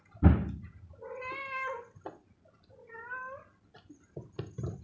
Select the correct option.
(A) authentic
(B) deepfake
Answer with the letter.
A